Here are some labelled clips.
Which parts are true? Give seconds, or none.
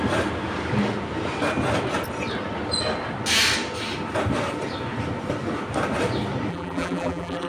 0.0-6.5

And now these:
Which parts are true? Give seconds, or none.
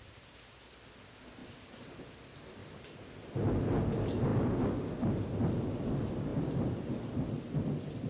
0.0-1.4; 2.0-2.6; 3.3-6.3; 6.9-8.1